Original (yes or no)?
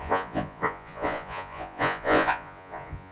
no